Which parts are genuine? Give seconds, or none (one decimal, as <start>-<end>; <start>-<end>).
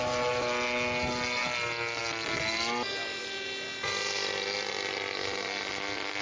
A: 0.0-6.2